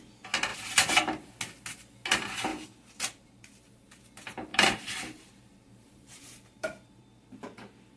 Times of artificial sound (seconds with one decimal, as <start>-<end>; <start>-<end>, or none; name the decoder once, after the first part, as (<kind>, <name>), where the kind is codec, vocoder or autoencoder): 0.5-1.3 (vocoder, BigVGAN v2); 2.5-4.0; 4.5-7.0